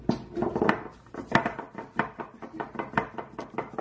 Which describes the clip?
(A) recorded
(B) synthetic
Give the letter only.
A